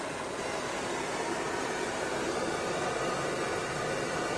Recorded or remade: recorded